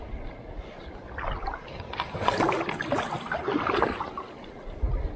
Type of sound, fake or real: real